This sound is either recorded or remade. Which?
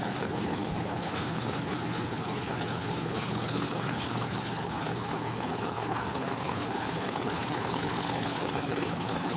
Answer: remade